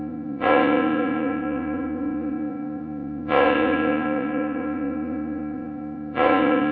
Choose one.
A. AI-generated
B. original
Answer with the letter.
A